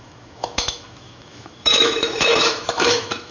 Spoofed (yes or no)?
yes